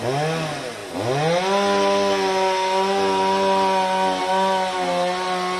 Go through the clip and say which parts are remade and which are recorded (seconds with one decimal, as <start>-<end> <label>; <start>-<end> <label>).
0.0-5.6 recorded